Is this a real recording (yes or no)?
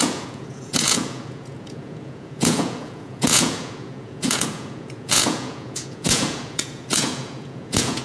no